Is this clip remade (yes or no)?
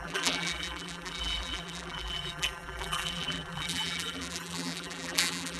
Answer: yes